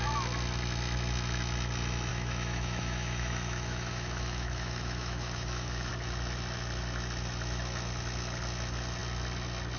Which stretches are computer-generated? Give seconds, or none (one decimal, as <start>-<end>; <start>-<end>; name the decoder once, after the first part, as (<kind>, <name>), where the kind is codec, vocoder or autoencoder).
2.1-5.9 (autoencoder, DAC-VAE)